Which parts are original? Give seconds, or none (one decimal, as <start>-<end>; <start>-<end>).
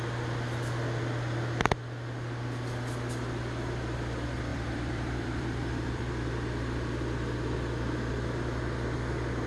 0.0-4.5; 6.0-9.5